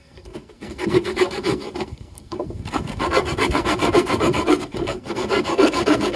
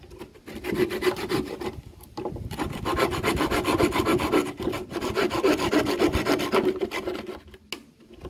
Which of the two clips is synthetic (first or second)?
first